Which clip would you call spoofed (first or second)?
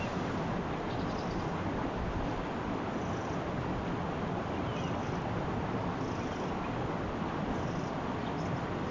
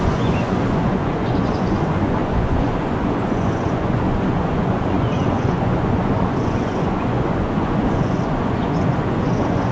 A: second